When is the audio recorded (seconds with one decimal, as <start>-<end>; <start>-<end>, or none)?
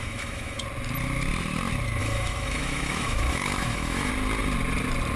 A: 0.6-2.0; 4.1-5.2